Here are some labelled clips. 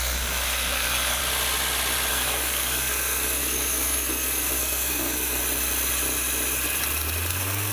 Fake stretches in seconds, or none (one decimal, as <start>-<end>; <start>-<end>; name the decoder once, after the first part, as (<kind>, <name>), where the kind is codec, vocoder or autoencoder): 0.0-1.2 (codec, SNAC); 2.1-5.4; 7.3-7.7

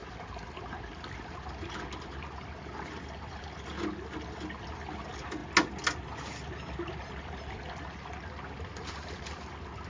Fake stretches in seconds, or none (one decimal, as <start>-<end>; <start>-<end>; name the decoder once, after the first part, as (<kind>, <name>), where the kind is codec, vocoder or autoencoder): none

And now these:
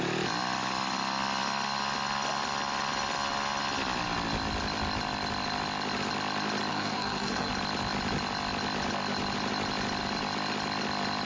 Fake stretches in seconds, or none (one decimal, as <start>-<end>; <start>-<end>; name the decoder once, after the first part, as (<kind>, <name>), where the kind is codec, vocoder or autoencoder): 6.7-7.5 (codec, SNAC)